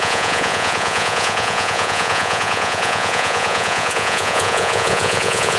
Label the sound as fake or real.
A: fake